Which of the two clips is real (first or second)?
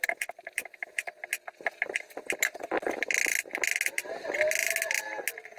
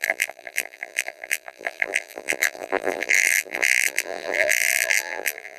first